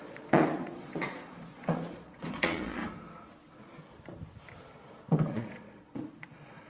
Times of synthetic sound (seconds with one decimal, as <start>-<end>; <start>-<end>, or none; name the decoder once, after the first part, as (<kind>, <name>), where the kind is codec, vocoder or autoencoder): 0.0-2.8 (vocoder, Vocos); 4.7-6.7